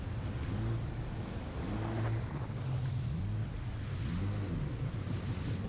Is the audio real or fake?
real